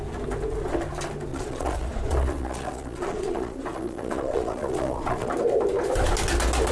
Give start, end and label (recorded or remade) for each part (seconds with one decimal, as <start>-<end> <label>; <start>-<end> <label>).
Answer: 0.0-1.3 recorded; 1.3-5.3 remade; 5.3-6.7 recorded